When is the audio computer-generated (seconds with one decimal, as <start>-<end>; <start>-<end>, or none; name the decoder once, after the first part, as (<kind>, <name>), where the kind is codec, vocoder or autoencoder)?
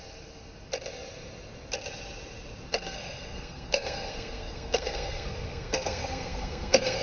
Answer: 2.7-7.0 (codec, SNAC)